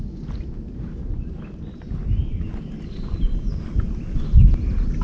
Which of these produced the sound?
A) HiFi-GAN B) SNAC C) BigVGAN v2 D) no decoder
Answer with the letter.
D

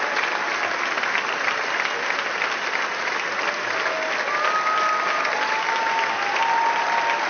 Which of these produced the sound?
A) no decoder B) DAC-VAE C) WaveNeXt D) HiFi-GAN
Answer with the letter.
A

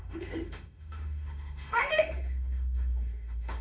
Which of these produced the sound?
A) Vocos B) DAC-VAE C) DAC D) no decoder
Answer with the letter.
B